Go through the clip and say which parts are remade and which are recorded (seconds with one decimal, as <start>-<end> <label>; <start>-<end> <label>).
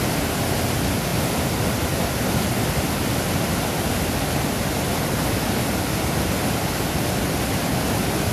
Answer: 0.0-8.3 recorded